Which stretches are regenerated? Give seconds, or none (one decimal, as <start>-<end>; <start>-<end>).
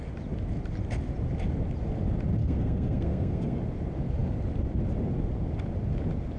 2.4-3.6